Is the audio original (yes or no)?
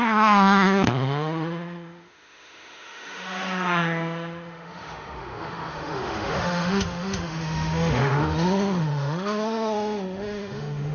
no